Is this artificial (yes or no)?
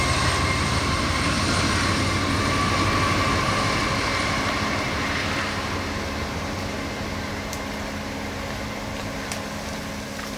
no